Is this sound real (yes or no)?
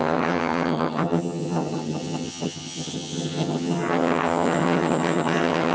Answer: no